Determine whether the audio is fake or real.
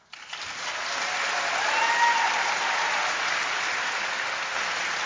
real